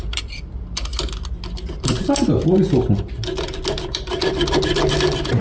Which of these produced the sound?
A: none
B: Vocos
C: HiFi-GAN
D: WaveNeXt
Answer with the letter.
A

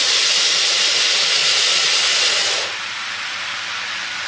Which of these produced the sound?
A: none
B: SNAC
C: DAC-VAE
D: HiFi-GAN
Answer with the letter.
A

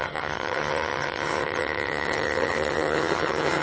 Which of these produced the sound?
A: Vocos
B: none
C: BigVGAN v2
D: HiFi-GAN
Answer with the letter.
D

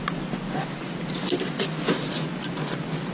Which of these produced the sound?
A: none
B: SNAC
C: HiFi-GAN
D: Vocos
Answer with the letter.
A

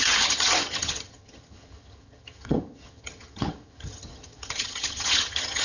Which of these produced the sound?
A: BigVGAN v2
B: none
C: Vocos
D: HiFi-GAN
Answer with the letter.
D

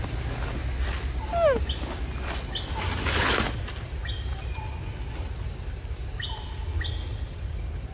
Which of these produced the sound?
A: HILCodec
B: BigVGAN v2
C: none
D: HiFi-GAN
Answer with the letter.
C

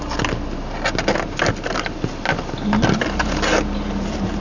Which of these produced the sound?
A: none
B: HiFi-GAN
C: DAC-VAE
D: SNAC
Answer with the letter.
A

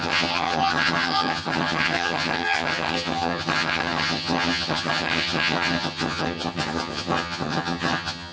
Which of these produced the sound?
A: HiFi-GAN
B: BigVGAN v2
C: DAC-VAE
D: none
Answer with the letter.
A